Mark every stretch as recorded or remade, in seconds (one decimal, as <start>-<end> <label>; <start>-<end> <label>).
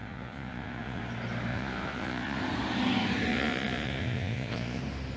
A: 0.0-1.0 remade; 1.0-1.5 recorded; 1.5-2.4 remade; 2.4-3.3 recorded; 3.3-4.8 remade; 4.8-5.2 recorded